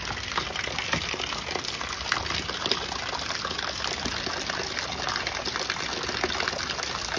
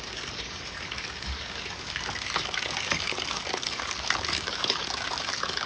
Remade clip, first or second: second